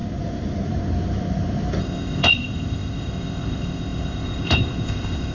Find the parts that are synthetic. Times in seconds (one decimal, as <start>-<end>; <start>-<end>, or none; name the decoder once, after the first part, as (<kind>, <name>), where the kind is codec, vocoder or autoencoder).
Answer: 1.8-5.3 (codec, ZipCodec)